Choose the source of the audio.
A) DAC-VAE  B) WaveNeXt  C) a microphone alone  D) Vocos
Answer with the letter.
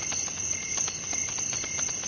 C